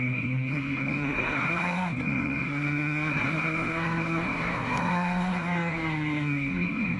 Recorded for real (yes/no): no